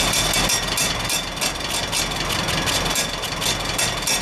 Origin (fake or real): real